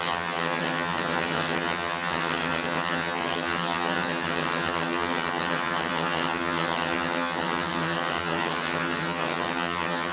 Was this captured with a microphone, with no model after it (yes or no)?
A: no